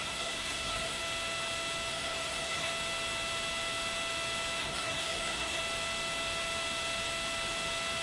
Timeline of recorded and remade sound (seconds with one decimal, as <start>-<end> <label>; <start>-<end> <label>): 0.0-1.0 remade; 1.0-1.9 recorded; 1.9-2.7 remade; 2.7-4.6 recorded; 4.6-5.6 remade; 5.6-8.0 recorded